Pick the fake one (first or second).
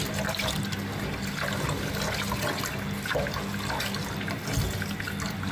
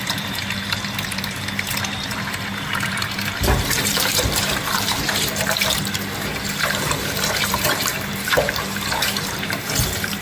second